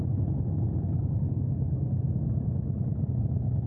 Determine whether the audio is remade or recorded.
recorded